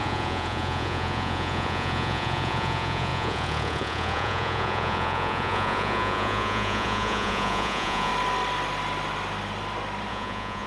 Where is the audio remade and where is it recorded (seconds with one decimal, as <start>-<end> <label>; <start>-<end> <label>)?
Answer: 0.0-8.1 remade; 8.1-10.1 recorded; 10.1-10.7 remade